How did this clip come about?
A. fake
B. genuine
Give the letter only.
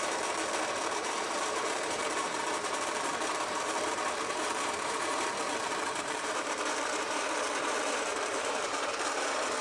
A